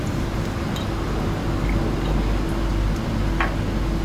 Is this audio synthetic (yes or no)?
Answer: no